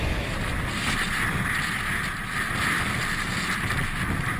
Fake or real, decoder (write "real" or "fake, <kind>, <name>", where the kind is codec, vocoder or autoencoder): real